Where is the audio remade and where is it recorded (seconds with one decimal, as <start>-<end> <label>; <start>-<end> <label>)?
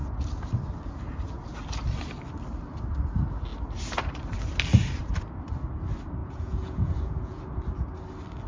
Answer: 0.0-6.2 recorded; 6.2-7.4 remade; 7.4-8.5 recorded